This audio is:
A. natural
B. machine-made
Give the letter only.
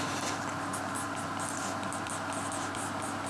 A